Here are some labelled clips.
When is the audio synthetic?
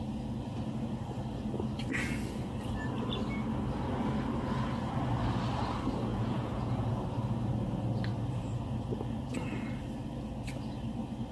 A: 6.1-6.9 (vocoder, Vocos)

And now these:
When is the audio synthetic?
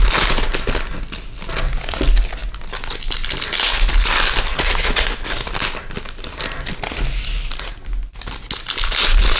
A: 4.5-5.1 (vocoder, Vocos)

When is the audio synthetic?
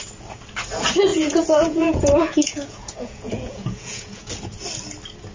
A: 1.1-4.3 (vocoder, Vocos)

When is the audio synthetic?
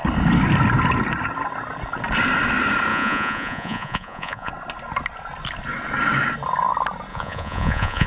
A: 2.9-4.5 (vocoder, Vocos); 7.1-8.1